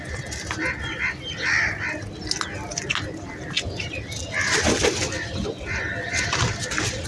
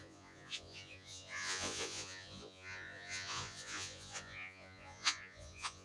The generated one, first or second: second